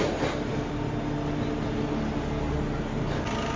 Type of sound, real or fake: real